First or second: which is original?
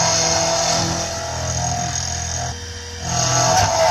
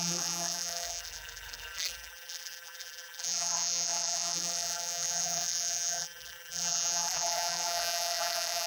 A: first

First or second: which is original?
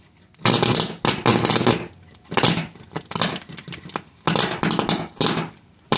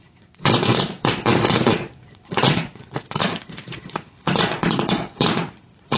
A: first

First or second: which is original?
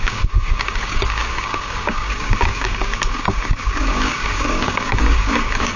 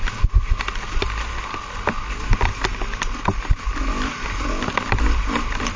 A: second